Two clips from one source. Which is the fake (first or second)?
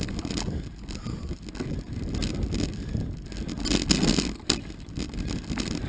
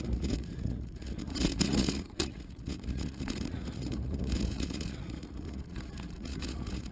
second